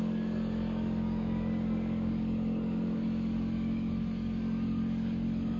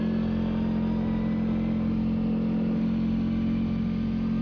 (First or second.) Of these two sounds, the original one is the second